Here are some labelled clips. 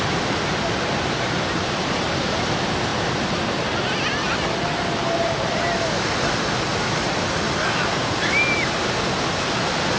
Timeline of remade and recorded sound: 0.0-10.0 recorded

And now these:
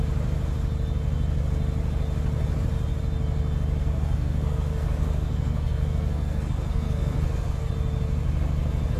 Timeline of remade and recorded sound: 0.0-3.8 recorded; 3.8-7.7 remade; 7.7-9.0 recorded

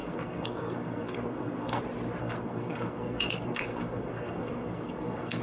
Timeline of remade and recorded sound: 0.0-1.8 remade; 1.8-2.2 recorded; 2.2-5.4 remade

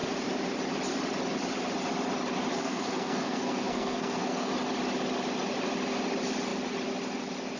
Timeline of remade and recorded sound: 0.0-2.6 recorded; 2.6-4.5 remade; 4.5-7.6 recorded

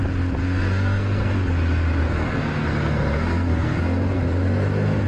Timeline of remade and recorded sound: 0.0-0.4 recorded; 0.4-1.3 remade; 1.3-2.0 recorded; 2.0-4.2 remade; 4.2-5.1 recorded